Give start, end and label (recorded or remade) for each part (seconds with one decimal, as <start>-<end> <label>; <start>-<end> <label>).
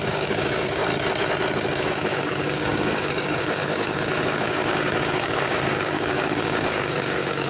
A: 0.0-0.8 remade; 0.8-1.8 recorded; 1.8-7.5 remade